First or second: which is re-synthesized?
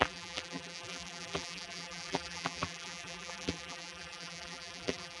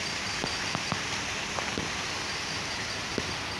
first